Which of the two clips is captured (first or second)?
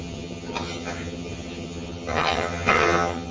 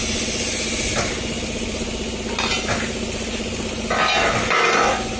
second